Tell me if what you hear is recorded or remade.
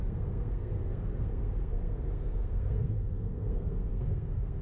remade